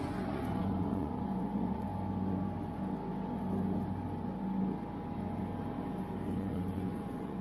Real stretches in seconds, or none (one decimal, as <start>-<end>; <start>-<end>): 1.9-6.3